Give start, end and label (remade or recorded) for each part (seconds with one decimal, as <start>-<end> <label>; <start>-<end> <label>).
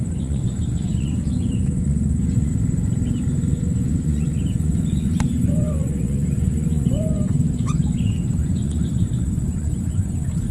0.0-2.5 remade; 2.5-3.5 recorded; 3.5-10.5 remade